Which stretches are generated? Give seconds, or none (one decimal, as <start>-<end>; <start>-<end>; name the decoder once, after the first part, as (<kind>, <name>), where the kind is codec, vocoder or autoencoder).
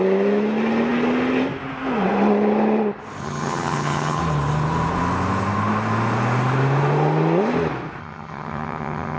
3.2-4.2 (vocoder, HiFi-GAN); 8.0-9.2